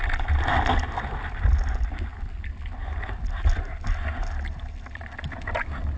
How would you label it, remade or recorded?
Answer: recorded